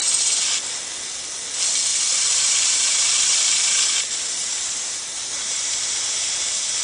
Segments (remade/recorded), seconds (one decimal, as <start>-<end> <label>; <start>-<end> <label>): 0.0-1.9 recorded; 1.9-6.0 remade; 6.0-6.8 recorded